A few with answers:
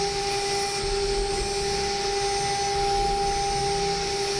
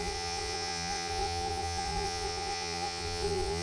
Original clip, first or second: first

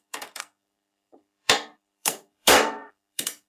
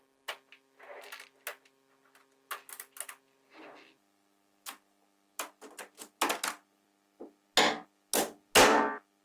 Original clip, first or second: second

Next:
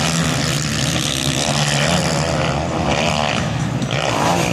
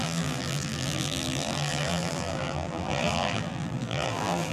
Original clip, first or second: first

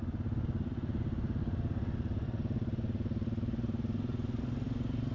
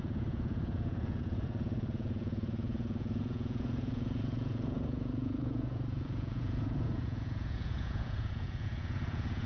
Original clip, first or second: first